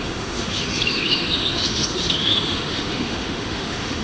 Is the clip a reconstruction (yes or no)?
yes